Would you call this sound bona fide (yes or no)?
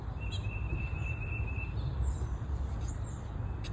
yes